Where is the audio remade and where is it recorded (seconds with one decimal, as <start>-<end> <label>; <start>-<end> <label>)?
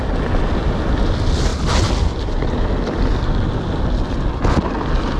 0.0-5.2 recorded